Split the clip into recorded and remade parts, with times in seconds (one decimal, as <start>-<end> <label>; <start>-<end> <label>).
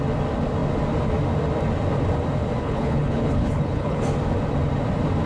0.0-2.6 recorded; 2.6-4.0 remade; 4.0-5.3 recorded